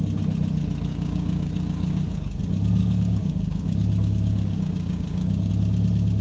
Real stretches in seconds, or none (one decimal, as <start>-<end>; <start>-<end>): 0.0-0.9; 2.4-2.8; 5.5-6.2